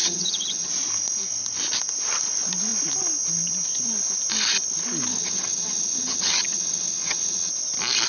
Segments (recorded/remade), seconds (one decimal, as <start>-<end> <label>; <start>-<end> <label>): 0.0-0.7 remade; 0.7-5.1 recorded; 5.1-7.5 remade; 7.5-8.1 recorded